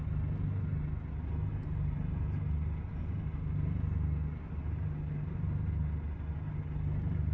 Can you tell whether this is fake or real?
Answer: real